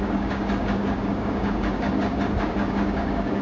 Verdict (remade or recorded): remade